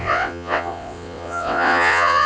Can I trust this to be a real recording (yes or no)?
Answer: no